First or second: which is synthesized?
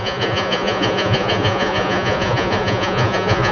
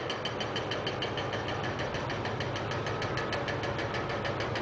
first